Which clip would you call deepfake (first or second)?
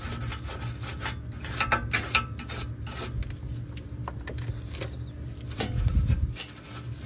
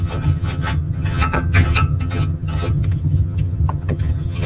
second